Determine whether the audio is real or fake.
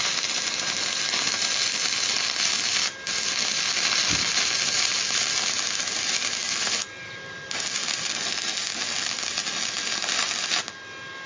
real